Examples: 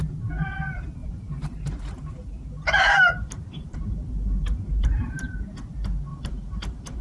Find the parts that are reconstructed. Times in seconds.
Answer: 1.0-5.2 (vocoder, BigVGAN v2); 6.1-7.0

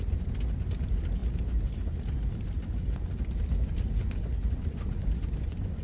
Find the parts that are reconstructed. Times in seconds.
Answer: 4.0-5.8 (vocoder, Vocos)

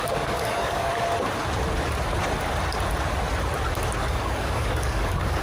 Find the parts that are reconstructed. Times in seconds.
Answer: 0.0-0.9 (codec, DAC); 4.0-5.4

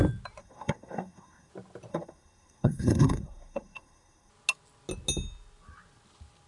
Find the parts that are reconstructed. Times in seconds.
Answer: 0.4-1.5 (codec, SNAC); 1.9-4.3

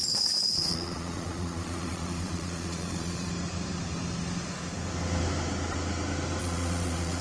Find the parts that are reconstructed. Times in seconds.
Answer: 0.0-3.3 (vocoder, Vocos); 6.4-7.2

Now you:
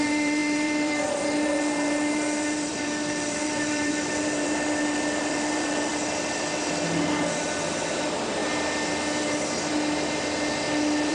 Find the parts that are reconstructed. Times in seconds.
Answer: 0.0-5.9 (vocoder, BigVGAN v2); 7.9-8.4

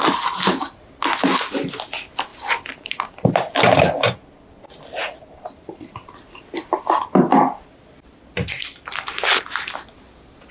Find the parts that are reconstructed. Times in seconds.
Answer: 2.3-3.5 (vocoder, BigVGAN v2); 5.0-9.9